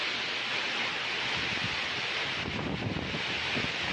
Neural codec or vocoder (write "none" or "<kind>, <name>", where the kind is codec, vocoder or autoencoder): none